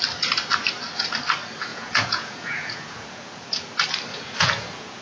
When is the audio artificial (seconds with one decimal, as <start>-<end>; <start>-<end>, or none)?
1.7-3.3; 4.1-5.0